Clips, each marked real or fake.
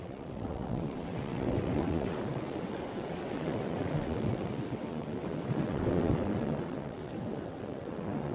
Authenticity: fake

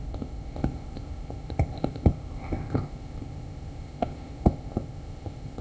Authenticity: fake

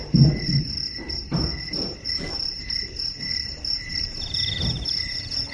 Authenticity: fake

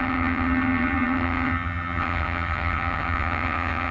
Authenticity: fake